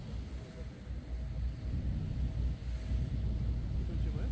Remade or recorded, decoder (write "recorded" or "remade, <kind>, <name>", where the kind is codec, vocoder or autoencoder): recorded